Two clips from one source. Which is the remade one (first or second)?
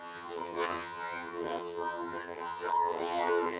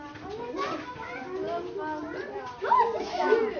first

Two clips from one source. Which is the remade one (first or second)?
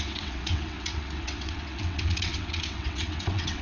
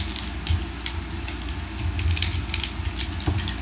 first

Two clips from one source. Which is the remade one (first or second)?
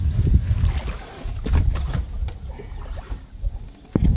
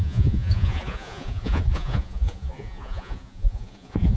second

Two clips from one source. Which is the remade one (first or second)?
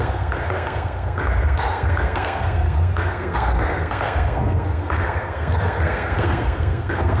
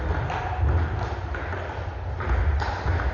first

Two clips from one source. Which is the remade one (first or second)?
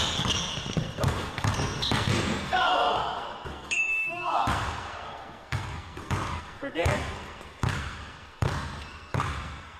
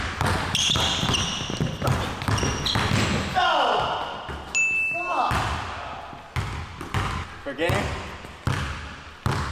first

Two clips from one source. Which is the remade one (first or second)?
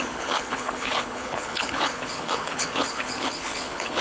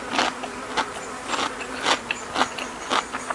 first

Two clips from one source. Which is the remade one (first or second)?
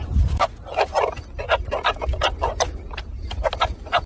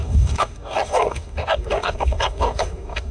second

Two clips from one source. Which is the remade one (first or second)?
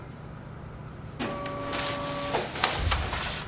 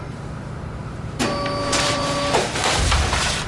second